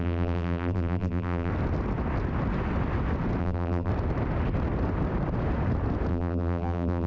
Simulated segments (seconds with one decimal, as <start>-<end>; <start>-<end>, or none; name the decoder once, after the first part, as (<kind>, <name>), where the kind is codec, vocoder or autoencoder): 0.0-1.5 (vocoder, BigVGAN v2); 3.4-3.9; 6.1-7.1